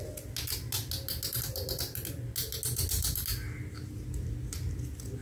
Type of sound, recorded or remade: recorded